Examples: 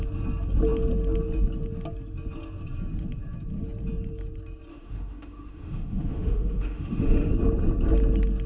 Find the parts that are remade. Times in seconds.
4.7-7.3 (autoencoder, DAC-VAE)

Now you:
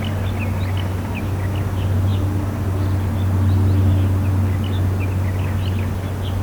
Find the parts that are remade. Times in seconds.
none

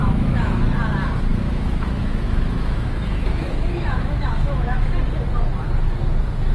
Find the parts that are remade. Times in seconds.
0.0-0.6 (autoencoder, DAC-VAE); 1.3-4.8

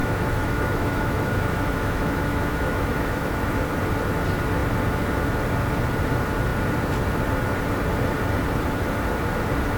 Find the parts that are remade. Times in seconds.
0.0-3.6 (autoencoder, DAC-VAE)

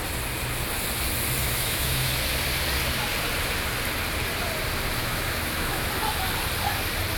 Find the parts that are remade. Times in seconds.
1.4-2.1 (autoencoder, DAC-VAE); 5.0-5.9

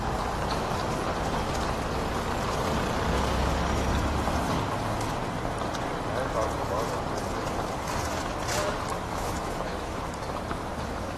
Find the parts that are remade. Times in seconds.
8.9-10.1 (autoencoder, DAC-VAE)

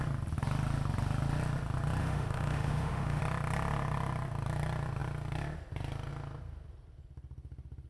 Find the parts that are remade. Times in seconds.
2.0-3.2 (autoencoder, DAC-VAE)